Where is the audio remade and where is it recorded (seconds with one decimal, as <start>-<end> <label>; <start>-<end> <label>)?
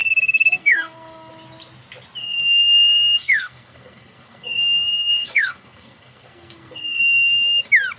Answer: 0.0-1.3 remade; 1.3-2.2 recorded; 2.2-7.0 remade; 7.0-8.0 recorded